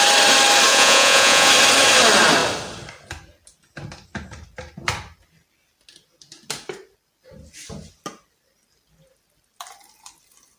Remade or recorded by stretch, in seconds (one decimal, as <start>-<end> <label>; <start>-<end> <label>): 0.0-0.7 recorded; 0.7-1.5 remade; 1.5-10.6 recorded